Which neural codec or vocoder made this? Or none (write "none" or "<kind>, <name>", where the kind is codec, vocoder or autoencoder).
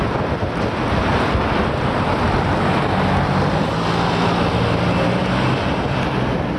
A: none